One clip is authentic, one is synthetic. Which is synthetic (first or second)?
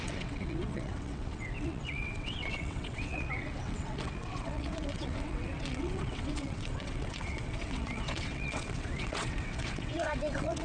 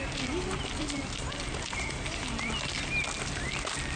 first